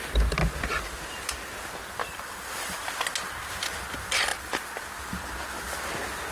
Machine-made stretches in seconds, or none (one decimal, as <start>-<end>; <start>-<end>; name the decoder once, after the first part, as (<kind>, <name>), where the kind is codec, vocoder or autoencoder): 2.0-2.8 (vocoder, BigVGAN v2)